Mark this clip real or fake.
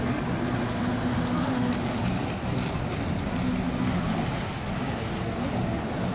real